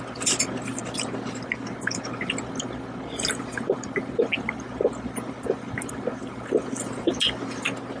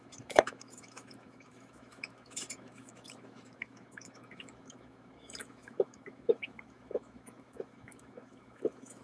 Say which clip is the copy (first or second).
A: second